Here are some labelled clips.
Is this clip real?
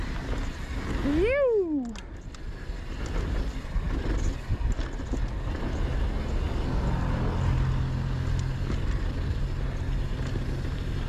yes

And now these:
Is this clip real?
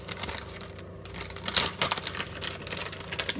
yes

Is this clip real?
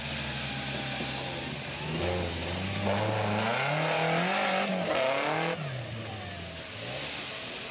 yes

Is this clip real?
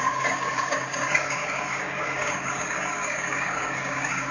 no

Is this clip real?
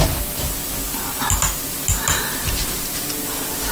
yes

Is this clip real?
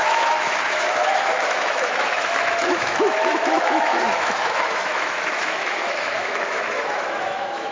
no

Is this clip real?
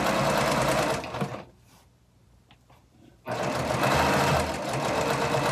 yes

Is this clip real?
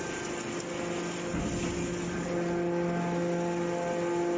yes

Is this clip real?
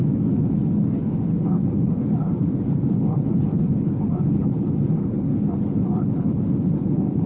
no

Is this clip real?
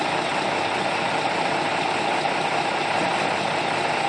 yes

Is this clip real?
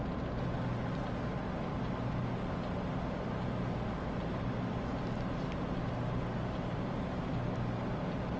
yes